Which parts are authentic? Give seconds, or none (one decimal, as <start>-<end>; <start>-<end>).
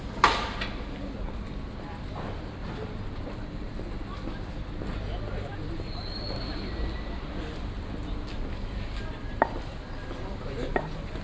0.0-11.2